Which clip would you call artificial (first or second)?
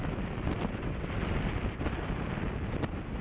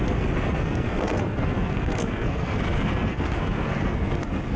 second